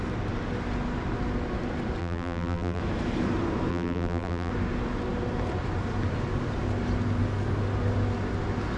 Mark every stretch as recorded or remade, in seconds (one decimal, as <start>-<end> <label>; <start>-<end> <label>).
0.0-2.0 recorded; 2.0-2.8 remade; 2.8-3.7 recorded; 3.7-4.5 remade; 4.5-8.8 recorded